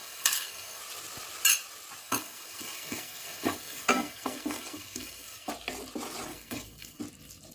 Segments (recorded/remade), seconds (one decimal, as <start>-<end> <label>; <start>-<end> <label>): 0.0-0.8 remade; 0.8-2.0 recorded; 2.0-5.5 remade; 5.5-6.3 recorded; 6.3-7.0 remade; 7.0-7.5 recorded